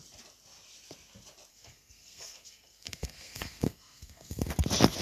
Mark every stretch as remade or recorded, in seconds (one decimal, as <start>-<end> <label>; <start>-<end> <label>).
0.0-1.5 recorded; 1.5-4.5 remade; 4.5-5.0 recorded